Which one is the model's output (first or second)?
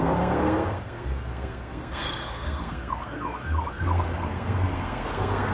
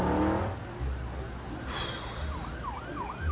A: first